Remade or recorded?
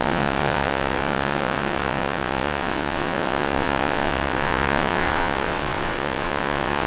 remade